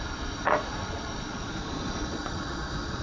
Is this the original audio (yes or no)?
no